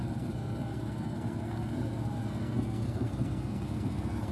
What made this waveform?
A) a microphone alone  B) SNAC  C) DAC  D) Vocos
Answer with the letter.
B